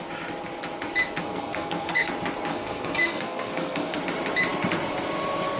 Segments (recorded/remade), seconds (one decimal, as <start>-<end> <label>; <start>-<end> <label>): 0.0-1.2 recorded; 1.2-2.1 remade; 2.1-2.5 recorded; 2.5-4.0 remade; 4.0-5.6 recorded